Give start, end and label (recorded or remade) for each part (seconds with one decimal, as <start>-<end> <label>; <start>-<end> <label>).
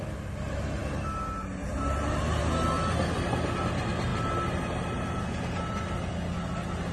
0.0-6.9 recorded